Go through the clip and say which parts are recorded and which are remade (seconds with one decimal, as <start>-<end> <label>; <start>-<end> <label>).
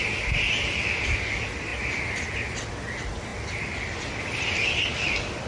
0.0-5.5 recorded